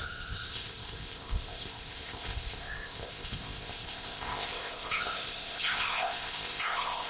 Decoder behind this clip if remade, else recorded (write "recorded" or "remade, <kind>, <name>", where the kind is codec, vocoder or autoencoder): remade, codec, ZipCodec